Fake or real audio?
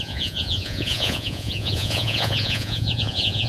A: fake